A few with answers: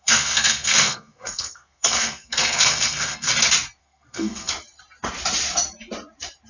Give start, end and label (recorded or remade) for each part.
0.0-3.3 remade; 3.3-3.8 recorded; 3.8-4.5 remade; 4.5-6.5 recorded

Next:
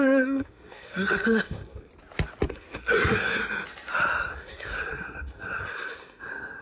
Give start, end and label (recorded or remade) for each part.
0.0-1.9 remade; 1.9-2.5 recorded; 2.5-3.4 remade; 3.4-4.3 recorded; 4.3-6.6 remade

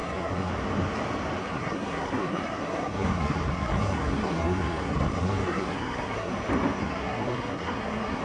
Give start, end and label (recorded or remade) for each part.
0.0-0.5 remade; 0.5-1.4 recorded; 1.4-6.3 remade; 6.3-6.8 recorded; 6.8-8.2 remade

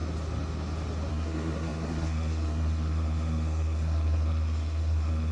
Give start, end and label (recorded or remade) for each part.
0.0-1.1 recorded; 1.1-5.3 remade

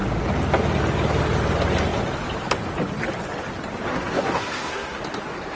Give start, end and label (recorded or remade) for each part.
0.0-3.9 recorded; 3.9-5.0 remade; 5.0-5.6 recorded